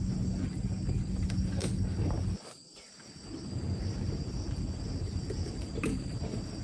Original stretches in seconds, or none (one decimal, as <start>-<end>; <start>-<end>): 0.0-6.6